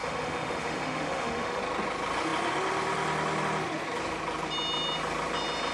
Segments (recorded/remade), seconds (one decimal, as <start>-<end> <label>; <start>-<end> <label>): 0.0-1.6 remade; 1.6-5.7 recorded

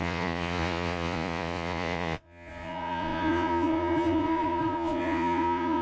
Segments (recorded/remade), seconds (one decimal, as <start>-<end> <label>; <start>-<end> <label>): 0.0-5.8 remade

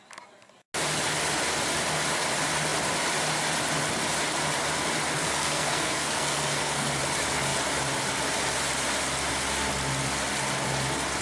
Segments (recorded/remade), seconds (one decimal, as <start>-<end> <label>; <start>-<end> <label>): 0.0-5.2 recorded; 5.2-6.9 remade; 6.9-11.2 recorded

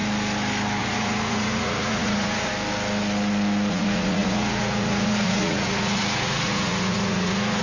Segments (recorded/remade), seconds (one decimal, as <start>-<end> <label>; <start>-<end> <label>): 0.0-0.8 recorded; 0.8-2.5 remade; 2.5-3.7 recorded; 3.7-7.6 remade

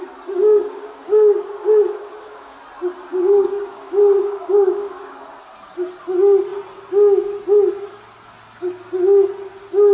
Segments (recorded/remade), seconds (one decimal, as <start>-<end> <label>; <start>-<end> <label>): 0.0-0.4 recorded; 0.4-2.6 remade; 2.6-3.1 recorded; 3.1-5.2 remade; 5.2-9.9 recorded

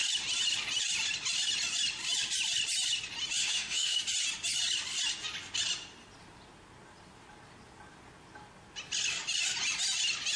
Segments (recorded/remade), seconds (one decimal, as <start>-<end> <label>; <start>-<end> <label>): 0.0-3.4 recorded; 3.4-4.0 remade; 4.0-10.4 recorded